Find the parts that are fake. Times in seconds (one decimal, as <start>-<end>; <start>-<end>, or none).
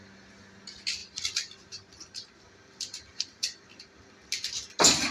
1.0-4.1